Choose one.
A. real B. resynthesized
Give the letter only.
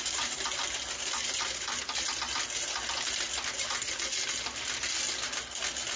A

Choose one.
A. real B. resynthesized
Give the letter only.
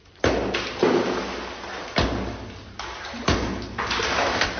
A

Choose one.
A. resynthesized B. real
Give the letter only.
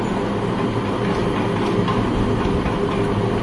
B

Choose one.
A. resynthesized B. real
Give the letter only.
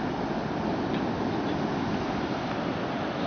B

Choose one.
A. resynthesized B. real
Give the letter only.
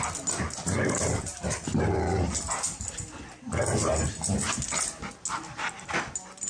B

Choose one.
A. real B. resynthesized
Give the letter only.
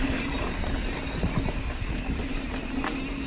A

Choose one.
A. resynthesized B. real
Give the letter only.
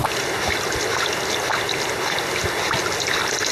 B